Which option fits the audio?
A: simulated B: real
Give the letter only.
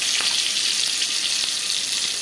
B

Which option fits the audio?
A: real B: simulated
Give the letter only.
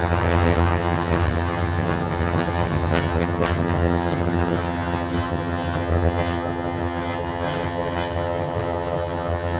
B